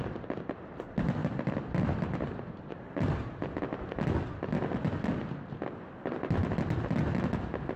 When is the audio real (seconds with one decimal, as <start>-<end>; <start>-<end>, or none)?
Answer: 0.0-1.2; 3.2-7.8